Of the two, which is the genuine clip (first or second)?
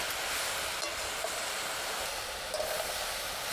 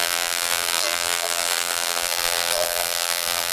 first